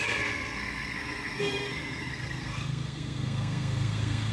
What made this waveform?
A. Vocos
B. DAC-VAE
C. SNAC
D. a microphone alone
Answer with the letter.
C